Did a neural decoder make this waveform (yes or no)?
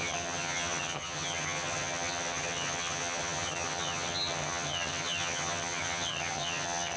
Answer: yes